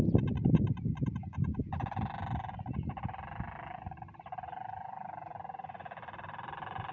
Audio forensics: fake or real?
real